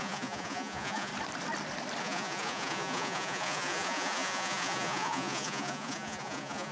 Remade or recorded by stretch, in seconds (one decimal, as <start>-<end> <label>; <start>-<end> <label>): 0.0-1.1 remade; 1.1-2.0 recorded; 2.0-6.7 remade